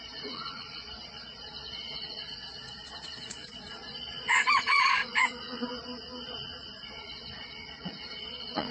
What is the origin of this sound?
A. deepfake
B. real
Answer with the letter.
A